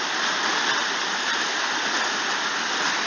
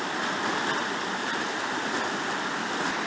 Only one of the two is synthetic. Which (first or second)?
first